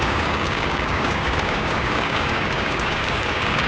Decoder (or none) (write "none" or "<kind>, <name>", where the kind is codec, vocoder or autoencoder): codec, DAC